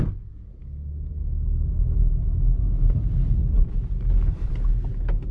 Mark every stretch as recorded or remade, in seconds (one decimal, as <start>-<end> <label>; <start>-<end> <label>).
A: 0.0-3.4 recorded; 3.4-4.5 remade; 4.5-5.3 recorded